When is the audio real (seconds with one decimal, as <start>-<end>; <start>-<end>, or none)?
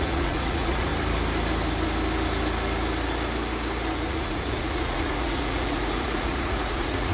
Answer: 0.9-4.1